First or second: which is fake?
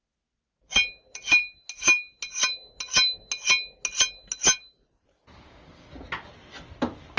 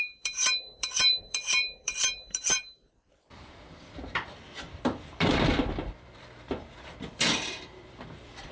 second